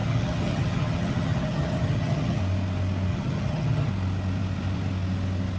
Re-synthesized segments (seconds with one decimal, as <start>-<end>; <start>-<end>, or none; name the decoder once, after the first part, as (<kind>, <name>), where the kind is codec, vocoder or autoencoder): 0.0-2.4 (vocoder, HiFi-GAN); 3.1-3.9